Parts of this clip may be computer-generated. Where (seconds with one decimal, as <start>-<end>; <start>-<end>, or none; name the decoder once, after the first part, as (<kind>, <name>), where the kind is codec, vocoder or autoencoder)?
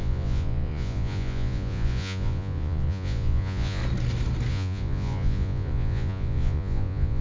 0.0-3.8 (vocoder, Vocos); 4.5-7.2